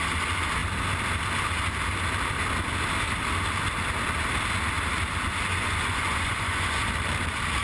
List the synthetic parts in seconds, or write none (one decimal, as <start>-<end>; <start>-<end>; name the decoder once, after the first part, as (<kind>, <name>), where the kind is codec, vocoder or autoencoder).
5.5-6.9 (vocoder, Vocos)